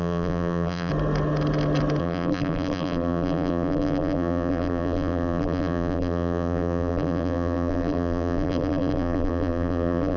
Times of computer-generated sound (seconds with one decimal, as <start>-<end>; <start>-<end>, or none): 0.0-0.9; 2.0-10.2